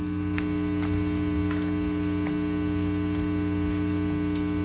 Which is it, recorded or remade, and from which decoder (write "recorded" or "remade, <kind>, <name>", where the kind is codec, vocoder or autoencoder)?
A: recorded